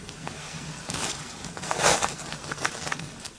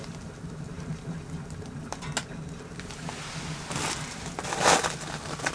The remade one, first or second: first